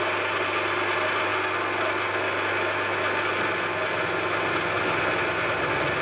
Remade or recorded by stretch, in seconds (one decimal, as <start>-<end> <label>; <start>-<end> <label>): 0.0-6.0 recorded